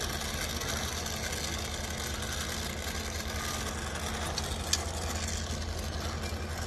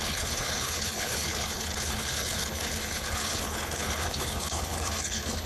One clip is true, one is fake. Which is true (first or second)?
first